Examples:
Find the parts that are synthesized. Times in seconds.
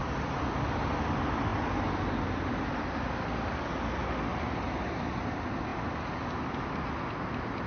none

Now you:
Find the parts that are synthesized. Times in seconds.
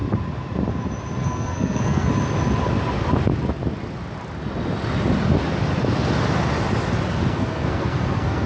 1.2-2.1 (codec, SNAC); 7.2-8.5